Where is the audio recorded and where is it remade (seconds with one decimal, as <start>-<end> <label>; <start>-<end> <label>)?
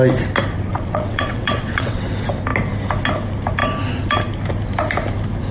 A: 0.0-0.7 recorded; 0.7-2.1 remade; 2.1-5.5 recorded